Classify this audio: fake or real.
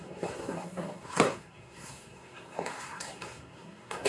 fake